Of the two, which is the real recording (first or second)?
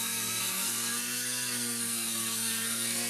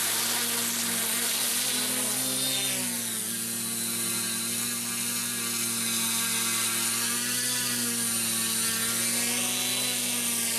second